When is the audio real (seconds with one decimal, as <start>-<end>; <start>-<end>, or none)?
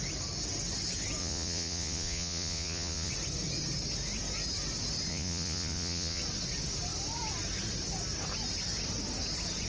0.0-1.2; 3.1-5.1; 6.2-9.7